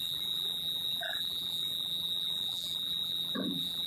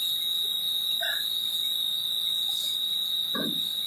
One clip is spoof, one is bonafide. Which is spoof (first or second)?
first